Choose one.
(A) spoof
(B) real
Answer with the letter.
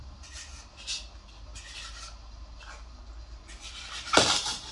B